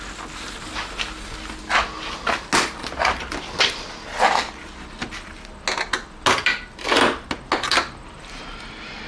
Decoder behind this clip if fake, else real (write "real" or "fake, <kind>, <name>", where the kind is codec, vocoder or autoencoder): real